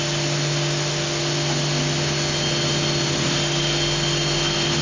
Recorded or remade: recorded